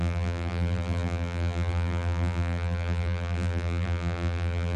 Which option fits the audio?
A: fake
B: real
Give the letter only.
A